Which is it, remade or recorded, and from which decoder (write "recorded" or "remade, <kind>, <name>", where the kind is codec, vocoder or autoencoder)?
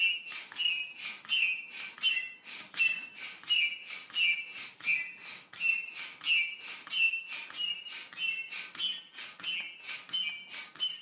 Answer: recorded